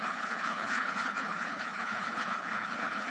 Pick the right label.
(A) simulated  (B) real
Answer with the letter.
A